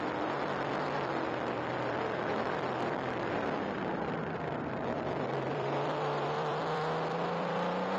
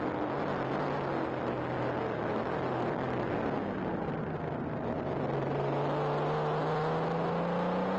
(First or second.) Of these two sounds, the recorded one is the second